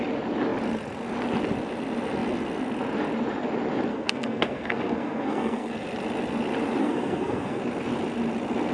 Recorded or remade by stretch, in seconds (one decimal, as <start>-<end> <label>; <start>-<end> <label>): 0.0-3.9 recorded; 3.9-5.7 remade; 5.7-6.8 recorded; 6.8-7.6 remade; 7.6-8.7 recorded